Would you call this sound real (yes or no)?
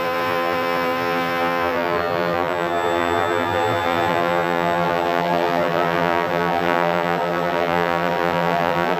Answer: no